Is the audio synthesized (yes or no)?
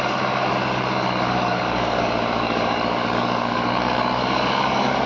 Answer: yes